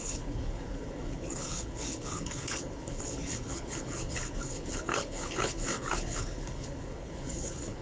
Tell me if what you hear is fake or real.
fake